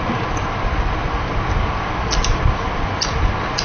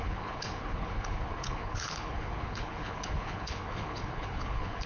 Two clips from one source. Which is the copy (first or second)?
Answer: second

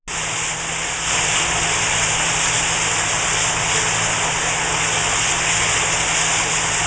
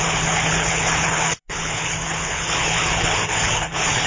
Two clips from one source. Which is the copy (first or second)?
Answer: second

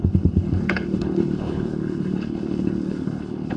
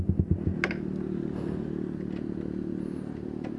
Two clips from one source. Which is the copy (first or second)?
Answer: first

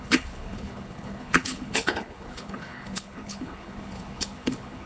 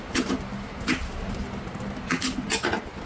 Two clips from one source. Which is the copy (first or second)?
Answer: first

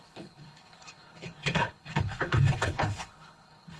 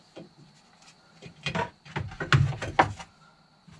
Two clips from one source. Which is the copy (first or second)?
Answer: first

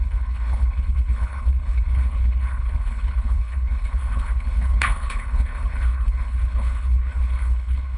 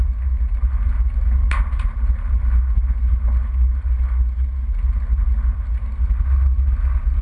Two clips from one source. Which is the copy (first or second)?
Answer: first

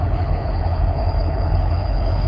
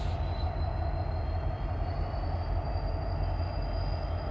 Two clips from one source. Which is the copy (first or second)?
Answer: first